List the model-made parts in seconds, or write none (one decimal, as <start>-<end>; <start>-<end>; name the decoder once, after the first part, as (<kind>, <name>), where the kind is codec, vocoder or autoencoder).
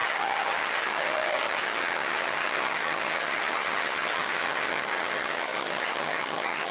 0.0-6.7 (vocoder, HiFi-GAN)